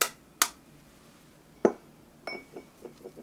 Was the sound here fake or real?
real